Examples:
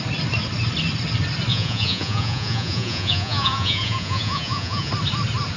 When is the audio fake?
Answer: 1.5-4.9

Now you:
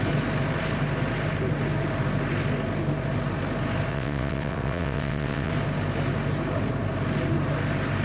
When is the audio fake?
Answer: 3.9-5.5

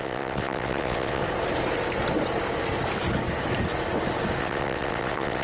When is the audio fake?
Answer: 0.0-1.2; 4.4-5.4

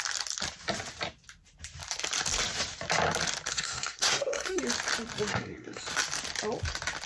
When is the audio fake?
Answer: 3.5-4.6; 5.3-5.8

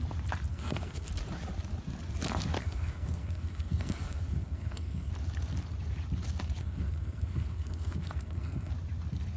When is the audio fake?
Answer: 0.5-1.1; 2.6-5.1; 6.6-8.7

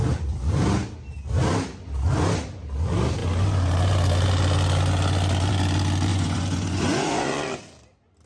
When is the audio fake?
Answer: 6.1-7.6

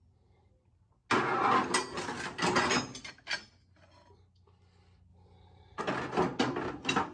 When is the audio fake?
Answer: none

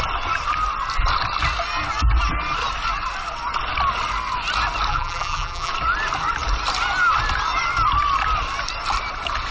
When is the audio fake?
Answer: 4.9-5.7